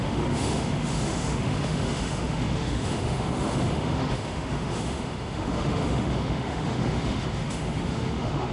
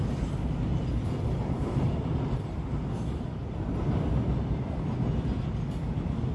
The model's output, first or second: first